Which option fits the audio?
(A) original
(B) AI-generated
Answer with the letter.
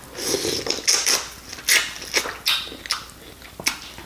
A